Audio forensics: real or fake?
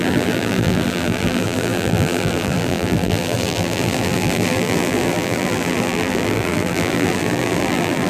fake